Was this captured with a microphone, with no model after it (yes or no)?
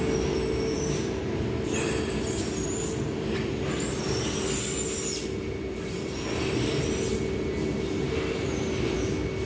yes